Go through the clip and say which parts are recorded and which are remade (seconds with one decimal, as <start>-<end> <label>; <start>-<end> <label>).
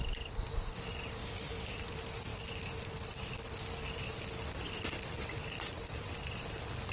0.0-1.2 recorded; 1.2-1.8 remade; 1.8-6.9 recorded